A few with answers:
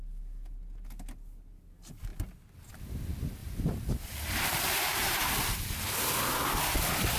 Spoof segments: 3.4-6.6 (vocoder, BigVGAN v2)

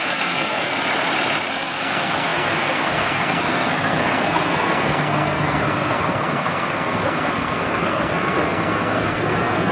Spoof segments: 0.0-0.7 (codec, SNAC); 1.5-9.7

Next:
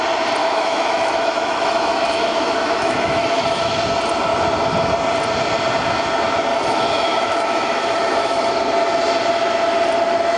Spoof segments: 0.4-3.8 (autoencoder, DAC-VAE); 6.5-8.5

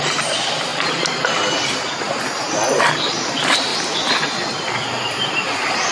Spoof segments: 0.0-0.7 (vocoder, BigVGAN v2); 2.8-3.7